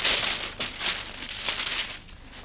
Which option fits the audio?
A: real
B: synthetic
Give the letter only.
A